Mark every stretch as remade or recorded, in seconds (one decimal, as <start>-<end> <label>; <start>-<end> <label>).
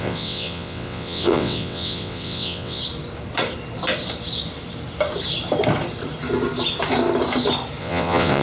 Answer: 0.0-2.8 remade; 2.8-7.8 recorded; 7.8-8.4 remade